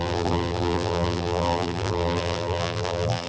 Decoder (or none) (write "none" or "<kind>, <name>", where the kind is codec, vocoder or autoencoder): vocoder, BigVGAN v2